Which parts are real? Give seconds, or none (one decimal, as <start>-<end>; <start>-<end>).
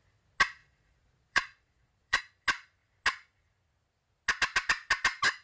0.0-0.6; 2.2-5.4